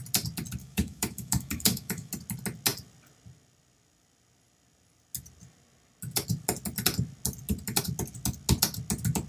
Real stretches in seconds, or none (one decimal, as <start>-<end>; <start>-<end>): 0.0-0.6; 2.1-9.3